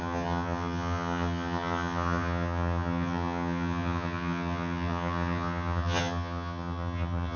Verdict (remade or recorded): remade